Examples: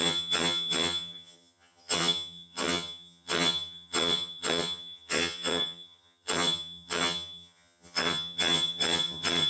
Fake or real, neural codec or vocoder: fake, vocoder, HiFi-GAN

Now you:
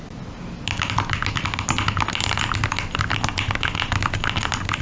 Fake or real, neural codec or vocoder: real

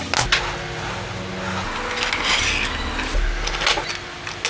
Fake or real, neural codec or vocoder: real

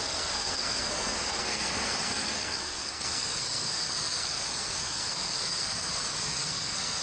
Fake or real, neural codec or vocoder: fake, codec, SNAC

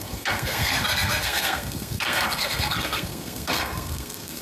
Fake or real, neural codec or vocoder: fake, codec, SNAC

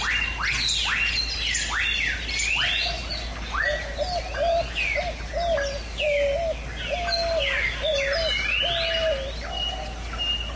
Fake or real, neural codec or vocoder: real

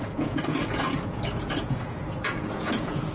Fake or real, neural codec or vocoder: fake, vocoder, Vocos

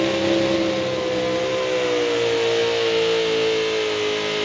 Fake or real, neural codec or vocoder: real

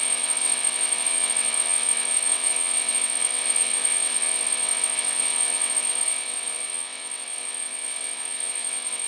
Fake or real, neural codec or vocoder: fake, vocoder, WaveNeXt